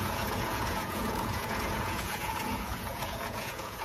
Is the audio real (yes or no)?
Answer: no